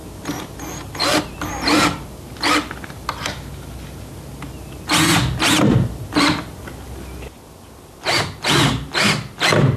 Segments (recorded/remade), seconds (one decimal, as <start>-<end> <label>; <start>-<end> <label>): 0.0-9.8 recorded